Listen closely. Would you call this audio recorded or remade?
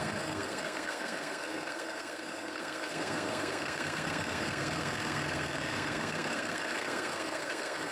remade